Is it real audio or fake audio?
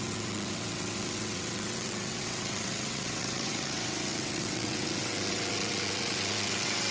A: fake